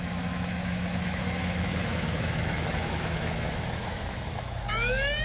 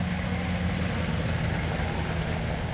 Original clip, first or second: second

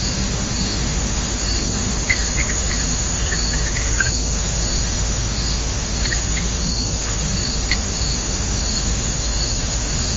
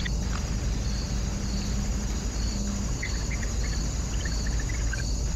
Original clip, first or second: second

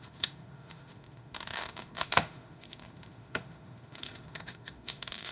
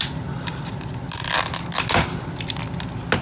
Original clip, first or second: second